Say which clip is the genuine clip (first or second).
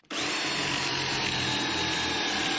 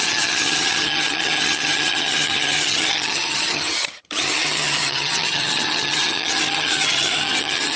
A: first